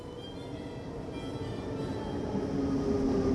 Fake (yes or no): no